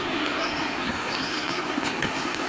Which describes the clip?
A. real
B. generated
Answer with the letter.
B